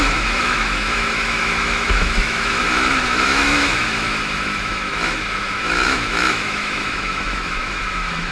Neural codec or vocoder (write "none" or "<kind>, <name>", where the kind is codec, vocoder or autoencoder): autoencoder, DAC-VAE